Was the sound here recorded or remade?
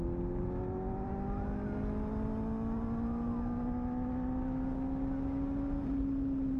recorded